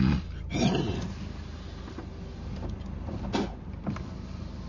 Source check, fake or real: real